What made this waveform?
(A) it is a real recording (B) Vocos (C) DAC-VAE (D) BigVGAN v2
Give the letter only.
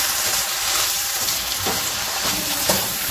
D